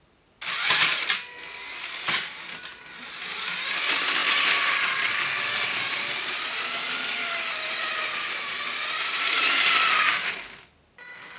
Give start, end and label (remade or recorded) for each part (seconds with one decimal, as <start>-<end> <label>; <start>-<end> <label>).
0.0-7.1 recorded; 7.1-7.9 remade; 7.9-11.4 recorded